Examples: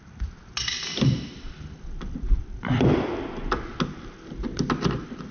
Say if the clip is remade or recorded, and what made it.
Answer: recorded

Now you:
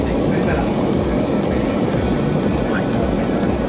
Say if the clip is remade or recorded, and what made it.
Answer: recorded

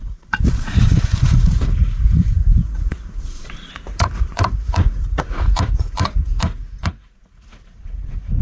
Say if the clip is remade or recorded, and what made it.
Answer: remade, vocoder, Vocos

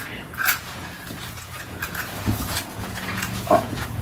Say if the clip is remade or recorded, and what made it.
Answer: remade, vocoder, Vocos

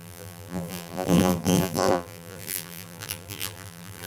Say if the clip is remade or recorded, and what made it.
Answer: remade, vocoder, BigVGAN v2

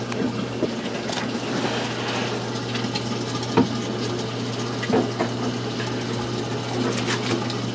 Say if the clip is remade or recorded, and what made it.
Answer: recorded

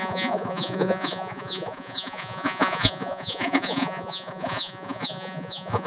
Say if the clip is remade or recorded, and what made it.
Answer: remade, vocoder, Vocos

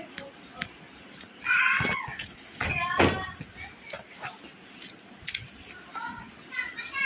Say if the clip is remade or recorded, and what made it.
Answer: recorded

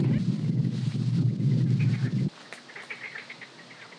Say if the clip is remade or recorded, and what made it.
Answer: recorded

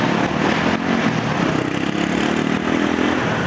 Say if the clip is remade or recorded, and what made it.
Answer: recorded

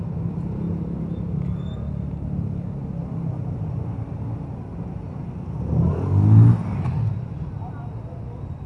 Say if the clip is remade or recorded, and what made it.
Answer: recorded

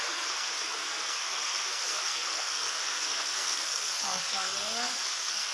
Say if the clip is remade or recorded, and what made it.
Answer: remade, codec, SNAC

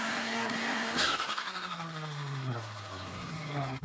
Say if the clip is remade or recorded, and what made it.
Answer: remade, codec, SNAC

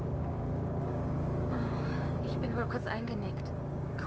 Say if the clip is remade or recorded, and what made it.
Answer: remade, codec, DAC